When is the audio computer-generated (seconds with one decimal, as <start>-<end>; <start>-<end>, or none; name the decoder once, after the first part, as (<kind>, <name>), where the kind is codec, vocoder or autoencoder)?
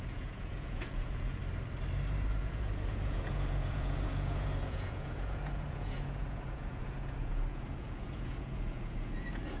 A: 0.0-1.4 (vocoder, Vocos); 2.4-9.6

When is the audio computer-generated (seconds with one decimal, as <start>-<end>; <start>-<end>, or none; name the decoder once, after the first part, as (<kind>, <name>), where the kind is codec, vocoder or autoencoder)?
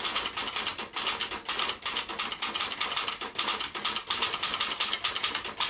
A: none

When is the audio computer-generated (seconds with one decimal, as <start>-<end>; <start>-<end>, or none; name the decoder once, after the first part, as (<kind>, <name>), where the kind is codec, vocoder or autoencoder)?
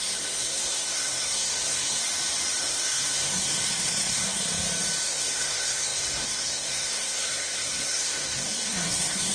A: 0.0-2.0 (codec, SNAC); 2.6-4.4; 5.1-9.3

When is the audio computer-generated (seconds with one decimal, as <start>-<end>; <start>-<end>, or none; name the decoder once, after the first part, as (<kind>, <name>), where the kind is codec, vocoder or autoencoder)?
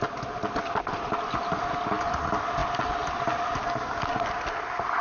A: none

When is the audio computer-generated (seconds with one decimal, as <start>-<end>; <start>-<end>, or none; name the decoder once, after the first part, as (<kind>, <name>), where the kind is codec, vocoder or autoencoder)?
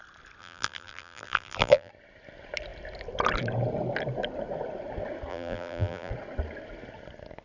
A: 0.4-1.9 (vocoder, BigVGAN v2); 5.3-6.1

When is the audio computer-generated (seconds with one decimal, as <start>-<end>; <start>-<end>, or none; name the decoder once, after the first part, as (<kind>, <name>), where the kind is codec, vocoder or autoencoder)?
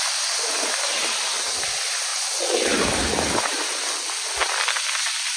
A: none